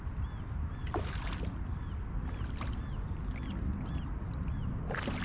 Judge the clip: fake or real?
real